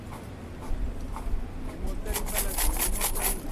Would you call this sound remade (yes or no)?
no